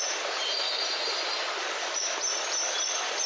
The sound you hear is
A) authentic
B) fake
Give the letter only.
A